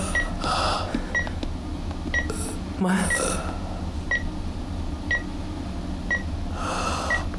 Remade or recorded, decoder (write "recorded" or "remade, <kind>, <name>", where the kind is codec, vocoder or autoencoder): recorded